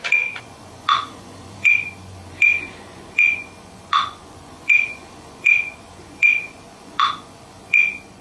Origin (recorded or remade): remade